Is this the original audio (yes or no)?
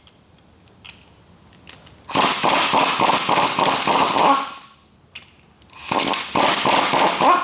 yes